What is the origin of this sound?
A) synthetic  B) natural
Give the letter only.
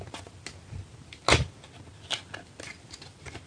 B